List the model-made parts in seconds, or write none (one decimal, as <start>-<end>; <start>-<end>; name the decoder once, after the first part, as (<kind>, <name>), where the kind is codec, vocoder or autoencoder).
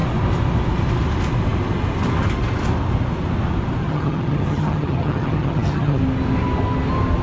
3.8-6.0 (vocoder, HiFi-GAN)